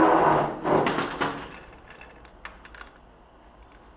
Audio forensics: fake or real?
real